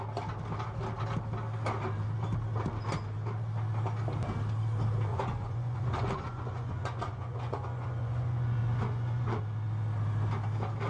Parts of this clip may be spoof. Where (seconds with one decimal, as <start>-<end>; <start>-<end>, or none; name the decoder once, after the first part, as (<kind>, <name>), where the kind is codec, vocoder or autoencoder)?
5.1-9.4 (vocoder, Vocos)